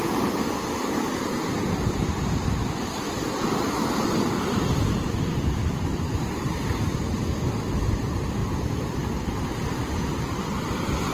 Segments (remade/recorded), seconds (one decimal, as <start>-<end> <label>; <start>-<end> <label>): 0.0-11.1 recorded